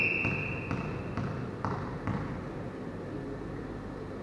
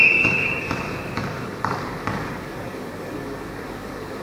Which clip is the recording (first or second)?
first